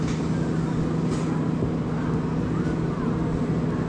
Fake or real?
real